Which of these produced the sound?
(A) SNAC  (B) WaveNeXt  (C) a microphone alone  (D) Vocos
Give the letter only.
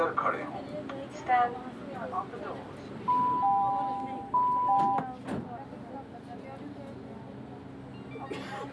C